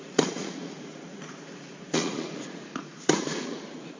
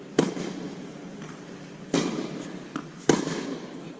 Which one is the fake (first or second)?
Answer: first